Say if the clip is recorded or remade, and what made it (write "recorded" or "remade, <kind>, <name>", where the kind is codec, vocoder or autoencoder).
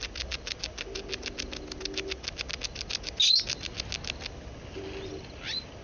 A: recorded